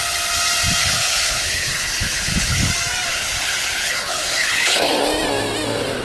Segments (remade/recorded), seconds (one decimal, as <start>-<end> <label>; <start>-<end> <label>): 0.0-0.8 recorded; 0.8-2.7 remade; 2.7-3.1 recorded; 3.1-5.0 remade; 5.0-6.0 recorded